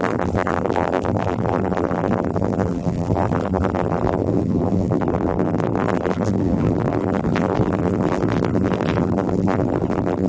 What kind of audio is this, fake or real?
fake